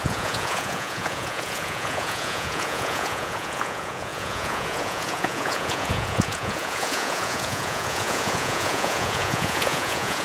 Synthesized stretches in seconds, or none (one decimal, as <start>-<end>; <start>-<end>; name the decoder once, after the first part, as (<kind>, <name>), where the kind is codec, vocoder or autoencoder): 0.0-10.2 (vocoder, Vocos)